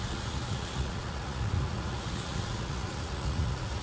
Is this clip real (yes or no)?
no